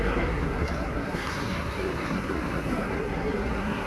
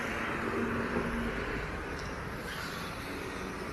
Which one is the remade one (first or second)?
first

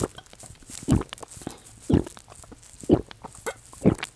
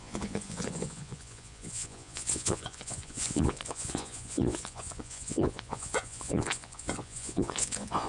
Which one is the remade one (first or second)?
second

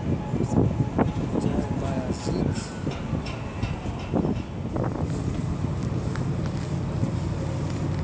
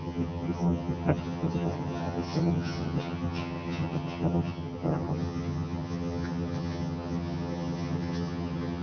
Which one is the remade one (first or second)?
second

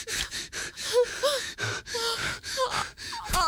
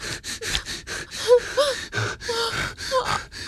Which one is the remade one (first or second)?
first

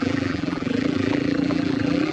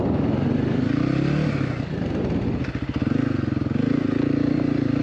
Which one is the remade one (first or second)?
first